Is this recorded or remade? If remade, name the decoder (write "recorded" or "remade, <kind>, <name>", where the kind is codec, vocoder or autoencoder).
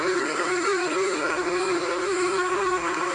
remade, codec, SNAC